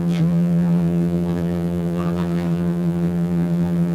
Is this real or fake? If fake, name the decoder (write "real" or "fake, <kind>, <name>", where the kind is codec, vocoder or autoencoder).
fake, vocoder, BigVGAN v2